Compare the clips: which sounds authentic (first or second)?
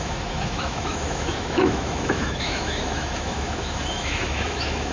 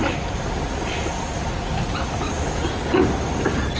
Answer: second